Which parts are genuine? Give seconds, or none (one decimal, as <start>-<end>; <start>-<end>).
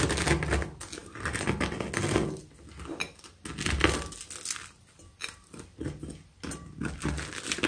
0.0-7.7